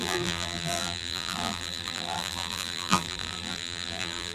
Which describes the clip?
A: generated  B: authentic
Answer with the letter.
A